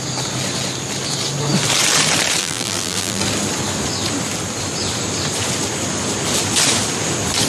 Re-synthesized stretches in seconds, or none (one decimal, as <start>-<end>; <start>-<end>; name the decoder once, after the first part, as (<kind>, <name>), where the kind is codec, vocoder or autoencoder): 2.4-3.2 (vocoder, BigVGAN v2)